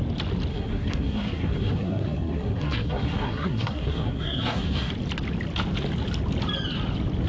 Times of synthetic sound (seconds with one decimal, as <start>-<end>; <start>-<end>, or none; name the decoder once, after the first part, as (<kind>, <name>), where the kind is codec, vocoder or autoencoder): 0.5-4.9 (codec, SNAC)